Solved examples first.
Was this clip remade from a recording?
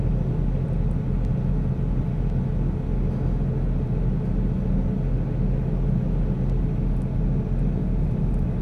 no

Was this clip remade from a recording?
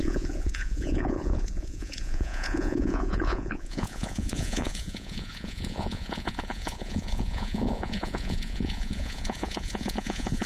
yes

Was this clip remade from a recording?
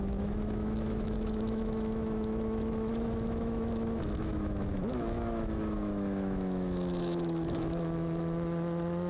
yes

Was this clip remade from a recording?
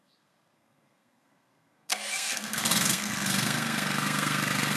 yes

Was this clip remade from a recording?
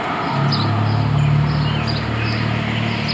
no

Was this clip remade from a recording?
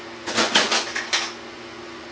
yes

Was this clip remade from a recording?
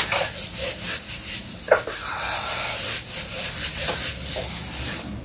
no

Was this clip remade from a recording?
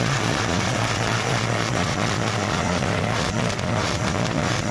yes